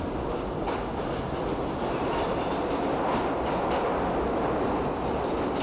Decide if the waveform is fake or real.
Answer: real